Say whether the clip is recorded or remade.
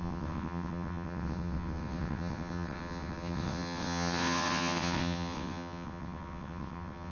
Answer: remade